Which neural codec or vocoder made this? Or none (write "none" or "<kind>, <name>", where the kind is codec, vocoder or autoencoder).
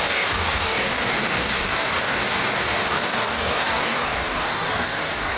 codec, DAC